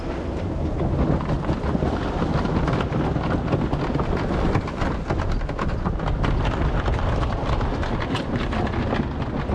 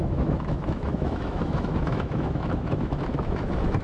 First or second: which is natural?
first